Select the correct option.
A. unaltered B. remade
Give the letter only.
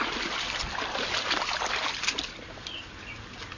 A